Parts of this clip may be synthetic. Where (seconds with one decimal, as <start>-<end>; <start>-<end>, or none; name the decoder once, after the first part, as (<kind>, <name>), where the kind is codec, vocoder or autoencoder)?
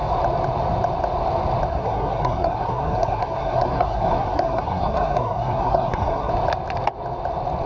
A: 1.7-6.3 (codec, SNAC)